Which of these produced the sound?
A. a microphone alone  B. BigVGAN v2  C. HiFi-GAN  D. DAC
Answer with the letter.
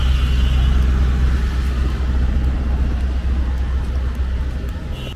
A